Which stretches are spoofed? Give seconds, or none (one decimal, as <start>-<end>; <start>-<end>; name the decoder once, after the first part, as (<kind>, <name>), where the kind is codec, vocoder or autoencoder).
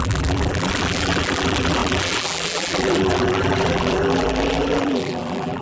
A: 0.0-5.6 (vocoder, BigVGAN v2)